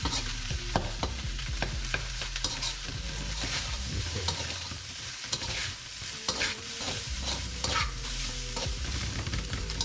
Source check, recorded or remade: remade